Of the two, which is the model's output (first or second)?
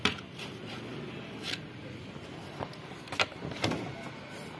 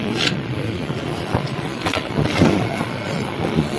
second